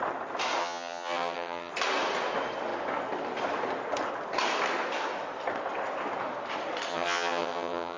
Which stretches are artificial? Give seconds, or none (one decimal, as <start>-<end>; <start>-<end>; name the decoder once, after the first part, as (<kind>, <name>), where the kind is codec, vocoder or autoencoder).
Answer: 0.6-1.7 (vocoder, HiFi-GAN); 6.9-8.0

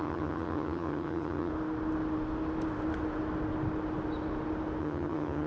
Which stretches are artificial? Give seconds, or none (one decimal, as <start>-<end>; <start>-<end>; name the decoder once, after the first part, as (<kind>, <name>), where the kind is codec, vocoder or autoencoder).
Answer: 0.0-1.5 (vocoder, HiFi-GAN); 4.8-5.5

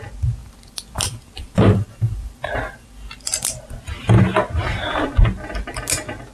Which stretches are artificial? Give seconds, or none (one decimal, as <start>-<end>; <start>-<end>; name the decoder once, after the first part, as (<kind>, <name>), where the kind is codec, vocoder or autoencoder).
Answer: 0.4-4.2 (vocoder, BigVGAN v2)

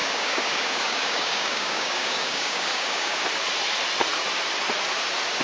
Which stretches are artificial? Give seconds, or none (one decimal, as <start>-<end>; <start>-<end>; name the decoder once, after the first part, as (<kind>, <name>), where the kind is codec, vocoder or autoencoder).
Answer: 0.0-3.2 (codec, DAC)